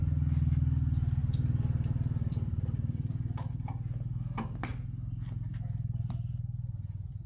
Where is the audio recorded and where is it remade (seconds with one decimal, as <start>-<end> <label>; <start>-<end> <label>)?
0.0-1.2 recorded; 1.2-3.5 remade; 3.5-4.7 recorded; 4.7-7.3 remade